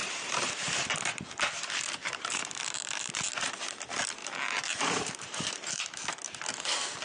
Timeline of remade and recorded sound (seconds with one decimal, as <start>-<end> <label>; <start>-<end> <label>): 0.0-1.4 remade; 1.4-2.0 recorded; 2.0-3.2 remade; 3.2-4.2 recorded; 4.2-6.1 remade; 6.1-7.0 recorded